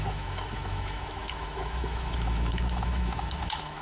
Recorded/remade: remade